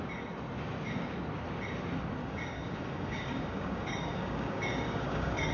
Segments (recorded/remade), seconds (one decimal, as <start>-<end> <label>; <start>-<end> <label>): 0.0-2.2 recorded; 2.2-5.5 remade